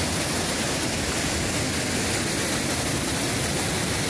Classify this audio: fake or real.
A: real